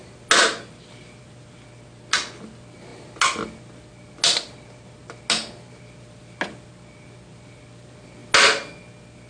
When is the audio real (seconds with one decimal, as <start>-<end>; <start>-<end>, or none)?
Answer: 0.0-9.3